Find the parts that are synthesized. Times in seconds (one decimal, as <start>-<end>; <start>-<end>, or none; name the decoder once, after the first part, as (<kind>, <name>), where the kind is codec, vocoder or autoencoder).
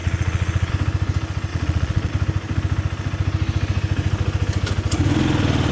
0.0-0.7 (vocoder, Vocos); 1.5-2.1